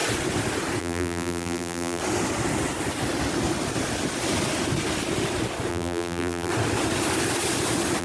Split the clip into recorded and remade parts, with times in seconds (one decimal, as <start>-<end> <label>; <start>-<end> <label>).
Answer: 0.0-0.8 recorded; 0.8-2.0 remade; 2.0-5.7 recorded; 5.7-6.5 remade; 6.5-8.0 recorded